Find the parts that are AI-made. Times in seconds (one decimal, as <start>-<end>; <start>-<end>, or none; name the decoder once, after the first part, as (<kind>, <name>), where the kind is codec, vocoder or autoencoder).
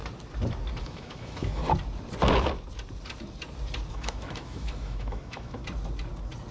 0.8-1.6 (autoencoder, DAC-VAE); 3.9-5.6